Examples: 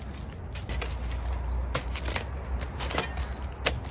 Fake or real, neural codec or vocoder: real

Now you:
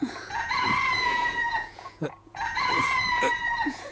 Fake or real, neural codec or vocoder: fake, vocoder, Vocos